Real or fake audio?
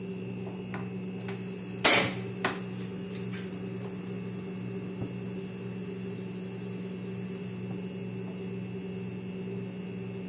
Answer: real